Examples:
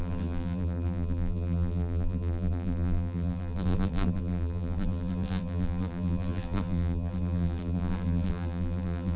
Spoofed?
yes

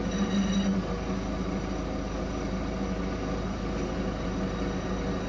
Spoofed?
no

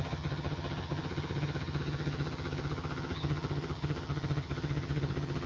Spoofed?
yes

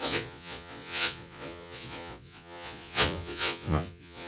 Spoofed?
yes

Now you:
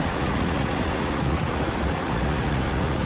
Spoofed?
yes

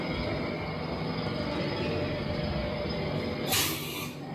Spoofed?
no